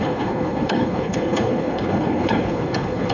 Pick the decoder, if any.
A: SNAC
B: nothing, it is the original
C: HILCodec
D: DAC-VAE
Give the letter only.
C